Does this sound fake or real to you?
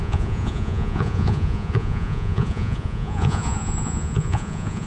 fake